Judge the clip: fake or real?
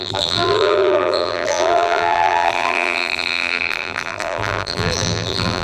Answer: fake